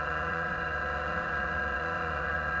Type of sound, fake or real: fake